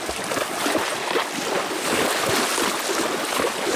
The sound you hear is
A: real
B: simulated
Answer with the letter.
A